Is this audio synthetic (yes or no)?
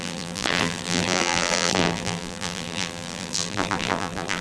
yes